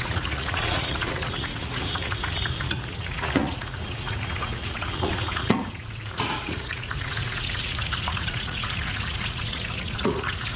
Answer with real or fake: fake